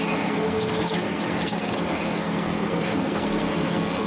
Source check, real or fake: fake